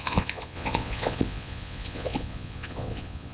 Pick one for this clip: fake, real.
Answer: fake